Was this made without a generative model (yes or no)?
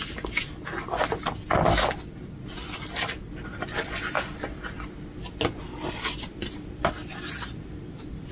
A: yes